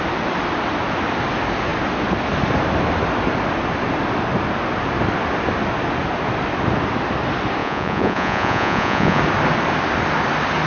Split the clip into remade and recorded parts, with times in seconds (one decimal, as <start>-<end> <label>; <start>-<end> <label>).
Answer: 0.0-7.6 recorded; 7.6-9.2 remade; 9.2-10.7 recorded